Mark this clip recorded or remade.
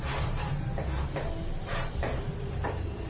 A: remade